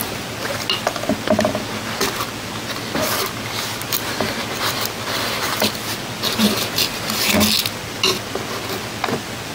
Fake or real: real